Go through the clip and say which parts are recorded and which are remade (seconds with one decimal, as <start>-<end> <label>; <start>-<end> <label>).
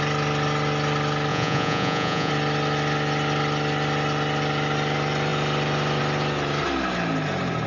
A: 0.0-1.3 recorded; 1.3-2.3 remade; 2.3-7.7 recorded